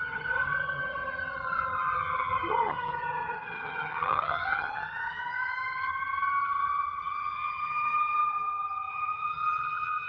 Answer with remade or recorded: remade